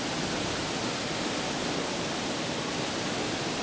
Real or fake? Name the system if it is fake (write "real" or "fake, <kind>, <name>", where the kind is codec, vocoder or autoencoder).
real